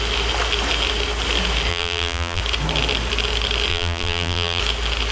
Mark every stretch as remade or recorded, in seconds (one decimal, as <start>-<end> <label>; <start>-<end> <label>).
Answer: 0.0-1.7 recorded; 1.7-2.4 remade; 2.4-3.7 recorded; 3.7-4.6 remade; 4.6-5.1 recorded